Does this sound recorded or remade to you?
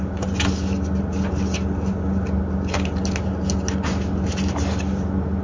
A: recorded